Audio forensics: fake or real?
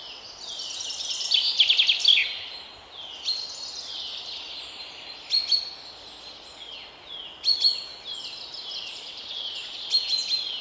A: real